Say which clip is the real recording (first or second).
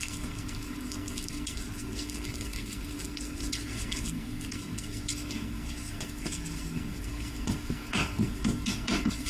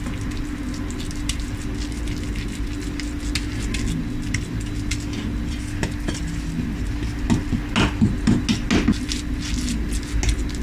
second